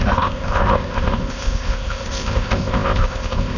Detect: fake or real fake